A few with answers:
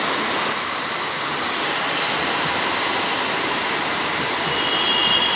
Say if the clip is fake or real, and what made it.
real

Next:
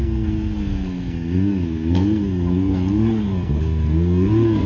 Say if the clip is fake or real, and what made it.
fake, codec, SNAC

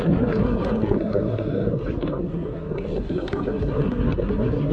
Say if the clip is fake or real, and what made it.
fake, codec, SNAC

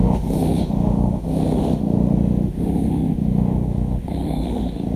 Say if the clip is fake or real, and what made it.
fake, autoencoder, DAC-VAE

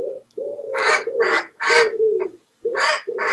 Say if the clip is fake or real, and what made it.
fake, codec, DAC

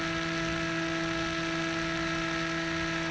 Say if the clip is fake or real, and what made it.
real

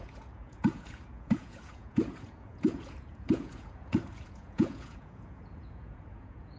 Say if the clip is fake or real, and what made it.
fake, vocoder, Vocos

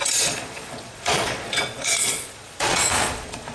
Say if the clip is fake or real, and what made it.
fake, vocoder, Vocos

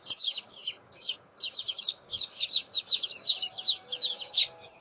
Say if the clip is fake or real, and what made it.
fake, codec, DAC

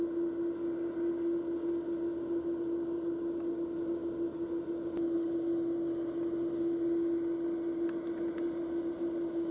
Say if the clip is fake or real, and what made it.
real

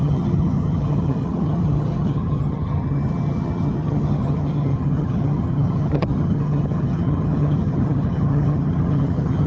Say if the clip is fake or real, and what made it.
fake, vocoder, HiFi-GAN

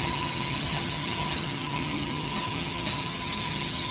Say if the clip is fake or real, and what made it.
fake, vocoder, HiFi-GAN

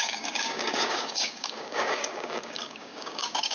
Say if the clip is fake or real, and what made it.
fake, codec, DAC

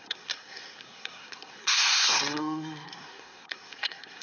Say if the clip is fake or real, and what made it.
fake, codec, SNAC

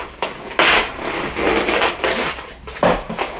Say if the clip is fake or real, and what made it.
real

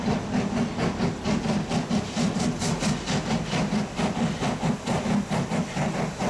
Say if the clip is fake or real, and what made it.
real